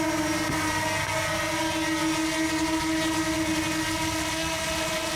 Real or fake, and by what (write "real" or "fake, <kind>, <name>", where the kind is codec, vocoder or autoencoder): real